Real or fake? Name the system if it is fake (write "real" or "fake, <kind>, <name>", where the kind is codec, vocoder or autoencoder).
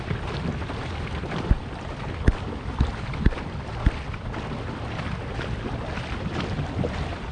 fake, vocoder, BigVGAN v2